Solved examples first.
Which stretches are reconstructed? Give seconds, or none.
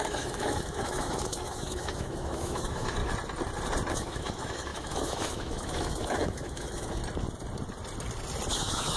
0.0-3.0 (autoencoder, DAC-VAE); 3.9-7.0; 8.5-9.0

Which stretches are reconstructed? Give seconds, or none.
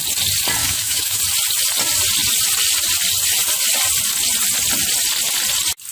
0.6-1.2 (autoencoder, DAC-VAE)